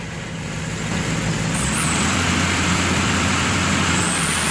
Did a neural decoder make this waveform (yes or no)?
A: no